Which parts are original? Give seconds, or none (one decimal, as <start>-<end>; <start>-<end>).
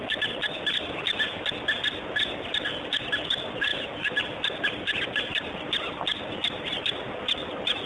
0.0-7.9